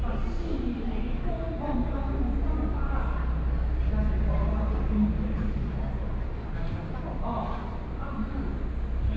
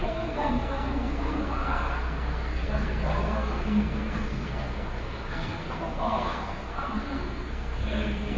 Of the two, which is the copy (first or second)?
second